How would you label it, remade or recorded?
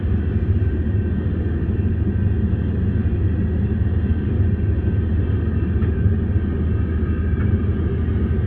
recorded